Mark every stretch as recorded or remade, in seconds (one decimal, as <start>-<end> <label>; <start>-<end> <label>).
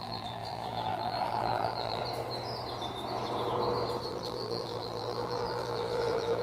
0.0-2.0 remade; 2.0-4.1 recorded; 4.1-6.4 remade